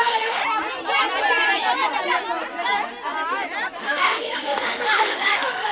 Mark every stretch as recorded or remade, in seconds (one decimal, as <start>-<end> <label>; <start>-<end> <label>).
0.0-0.4 remade; 0.4-3.8 recorded; 3.8-5.7 remade